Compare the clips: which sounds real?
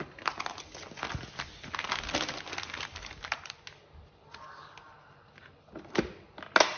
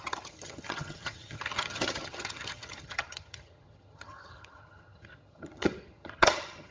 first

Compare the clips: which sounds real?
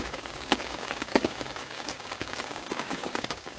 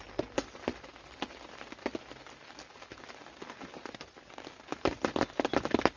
second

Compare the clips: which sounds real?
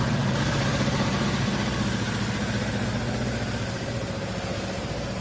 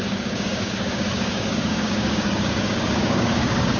first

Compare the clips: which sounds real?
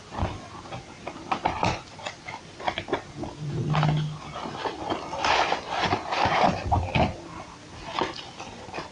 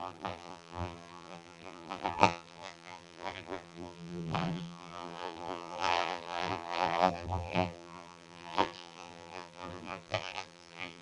first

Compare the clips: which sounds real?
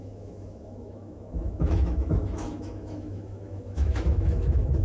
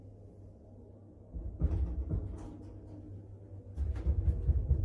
second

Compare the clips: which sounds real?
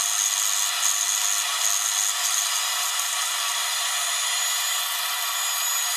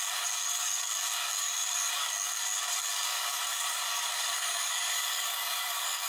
first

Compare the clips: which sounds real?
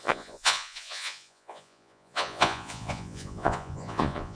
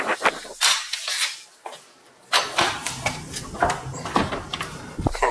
second